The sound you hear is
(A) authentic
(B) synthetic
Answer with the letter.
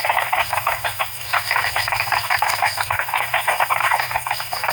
B